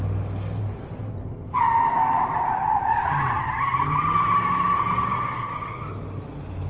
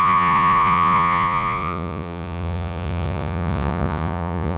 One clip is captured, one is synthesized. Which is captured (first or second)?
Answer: first